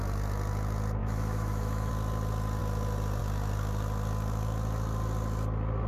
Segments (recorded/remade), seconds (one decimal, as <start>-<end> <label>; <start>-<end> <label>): 0.0-1.0 recorded; 1.0-1.9 remade; 1.9-5.9 recorded